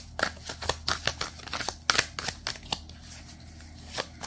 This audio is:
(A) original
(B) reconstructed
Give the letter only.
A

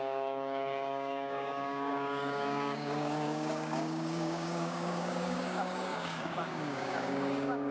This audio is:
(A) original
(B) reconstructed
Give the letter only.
B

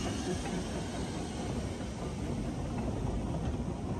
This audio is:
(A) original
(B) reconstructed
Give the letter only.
A